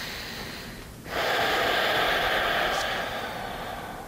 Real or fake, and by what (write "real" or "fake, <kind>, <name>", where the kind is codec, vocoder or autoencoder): real